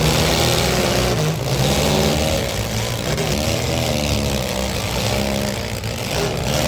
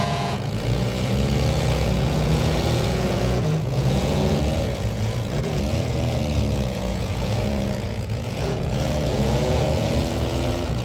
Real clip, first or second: first